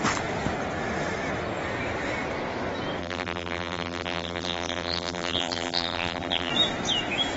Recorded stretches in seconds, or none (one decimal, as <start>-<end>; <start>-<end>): 0.0-3.0; 6.5-7.4